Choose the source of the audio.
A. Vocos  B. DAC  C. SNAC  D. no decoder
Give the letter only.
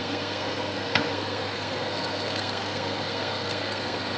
C